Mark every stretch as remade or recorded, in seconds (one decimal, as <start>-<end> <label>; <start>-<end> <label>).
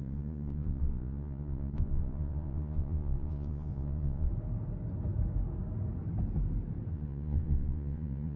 0.0-4.3 remade; 4.3-6.9 recorded; 6.9-8.4 remade